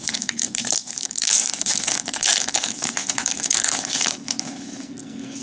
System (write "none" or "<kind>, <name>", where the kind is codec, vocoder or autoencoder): codec, SNAC